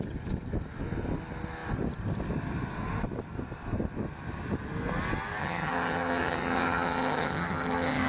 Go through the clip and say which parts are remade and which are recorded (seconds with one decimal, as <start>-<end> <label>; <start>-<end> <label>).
0.0-5.4 recorded; 5.4-8.1 remade